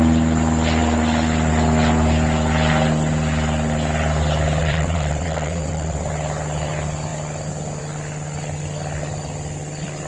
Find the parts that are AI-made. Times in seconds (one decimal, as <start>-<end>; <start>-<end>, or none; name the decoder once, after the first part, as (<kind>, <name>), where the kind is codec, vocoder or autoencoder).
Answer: 4.6-6.1 (vocoder, WaveNeXt)